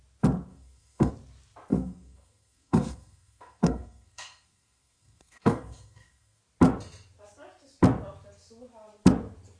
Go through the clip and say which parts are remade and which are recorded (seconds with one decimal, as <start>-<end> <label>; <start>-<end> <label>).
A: 0.0-0.5 recorded; 0.5-1.1 remade; 1.1-1.7 recorded; 1.7-6.4 remade; 6.4-9.6 recorded

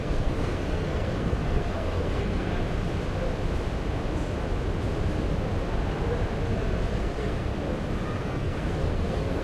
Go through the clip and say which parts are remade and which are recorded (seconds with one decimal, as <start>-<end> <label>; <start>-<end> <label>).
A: 0.0-2.5 remade; 2.5-6.9 recorded; 6.9-7.5 remade; 7.5-8.2 recorded; 8.2-9.4 remade

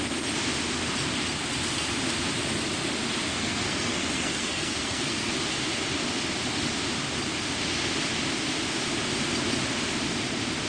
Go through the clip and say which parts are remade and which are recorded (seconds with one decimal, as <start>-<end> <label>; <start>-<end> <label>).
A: 0.0-3.3 recorded; 3.3-5.3 remade; 5.3-10.7 recorded